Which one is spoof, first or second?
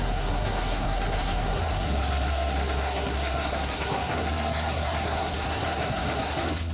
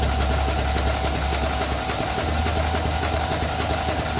first